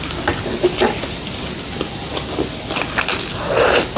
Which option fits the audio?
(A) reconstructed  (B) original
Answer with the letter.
B